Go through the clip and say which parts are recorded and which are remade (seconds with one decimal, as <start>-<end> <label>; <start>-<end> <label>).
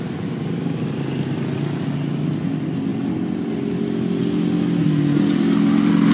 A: 0.0-6.1 recorded